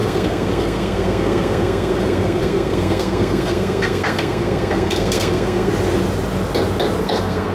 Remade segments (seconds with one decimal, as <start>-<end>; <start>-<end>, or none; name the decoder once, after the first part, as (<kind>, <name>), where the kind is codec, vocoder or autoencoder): 0.0-5.7 (codec, SNAC); 7.0-7.5